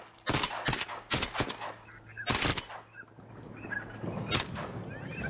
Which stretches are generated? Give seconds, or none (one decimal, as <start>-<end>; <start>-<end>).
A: none